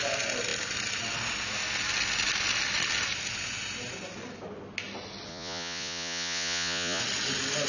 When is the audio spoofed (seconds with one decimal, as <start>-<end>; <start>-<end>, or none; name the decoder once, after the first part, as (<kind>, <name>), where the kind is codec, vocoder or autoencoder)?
5.3-7.0 (vocoder, Vocos)